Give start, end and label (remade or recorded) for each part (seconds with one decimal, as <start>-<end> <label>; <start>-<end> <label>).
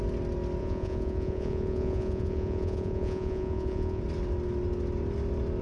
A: 0.0-0.6 recorded; 0.6-4.0 remade; 4.0-5.6 recorded